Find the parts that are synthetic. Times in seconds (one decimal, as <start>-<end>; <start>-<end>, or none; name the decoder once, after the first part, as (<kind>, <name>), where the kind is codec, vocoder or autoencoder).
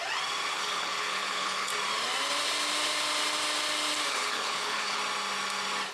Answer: 0.5-1.7 (codec, HILCodec); 4.1-5.0